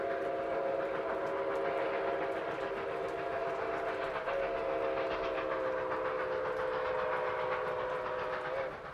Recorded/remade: recorded